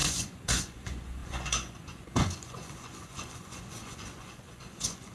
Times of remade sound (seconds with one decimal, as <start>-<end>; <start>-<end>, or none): 0.0-5.1